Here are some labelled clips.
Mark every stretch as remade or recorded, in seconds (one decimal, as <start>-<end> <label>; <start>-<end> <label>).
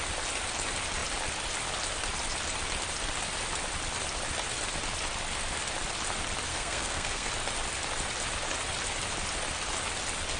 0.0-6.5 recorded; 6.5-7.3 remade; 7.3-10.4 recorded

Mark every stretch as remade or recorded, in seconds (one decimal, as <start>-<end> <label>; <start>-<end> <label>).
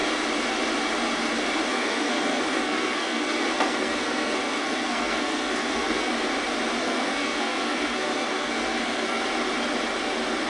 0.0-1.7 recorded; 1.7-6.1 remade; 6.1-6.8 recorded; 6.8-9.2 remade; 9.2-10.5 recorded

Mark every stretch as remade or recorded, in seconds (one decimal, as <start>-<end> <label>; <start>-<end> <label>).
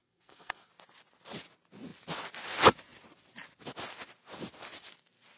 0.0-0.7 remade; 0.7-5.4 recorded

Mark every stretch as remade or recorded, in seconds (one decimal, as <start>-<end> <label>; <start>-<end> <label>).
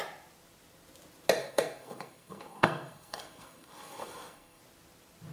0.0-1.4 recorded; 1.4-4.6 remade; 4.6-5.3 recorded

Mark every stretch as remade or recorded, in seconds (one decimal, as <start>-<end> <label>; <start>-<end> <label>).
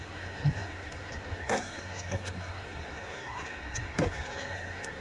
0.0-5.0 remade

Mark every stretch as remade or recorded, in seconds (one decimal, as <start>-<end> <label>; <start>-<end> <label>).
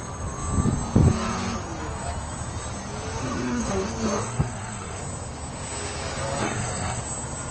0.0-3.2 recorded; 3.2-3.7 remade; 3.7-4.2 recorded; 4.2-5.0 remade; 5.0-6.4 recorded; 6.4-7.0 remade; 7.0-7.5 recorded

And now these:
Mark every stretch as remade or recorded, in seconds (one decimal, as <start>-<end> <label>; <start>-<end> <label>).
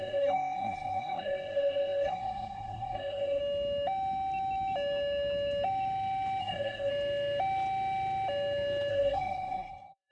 0.0-3.4 remade; 3.4-6.4 recorded; 6.4-6.9 remade; 6.9-8.9 recorded; 8.9-10.1 remade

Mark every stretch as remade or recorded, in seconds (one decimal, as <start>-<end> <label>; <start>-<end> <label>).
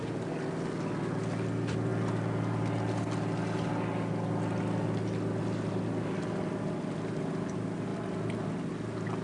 0.0-9.2 recorded